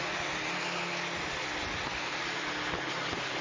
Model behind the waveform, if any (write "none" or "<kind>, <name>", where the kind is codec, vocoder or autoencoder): none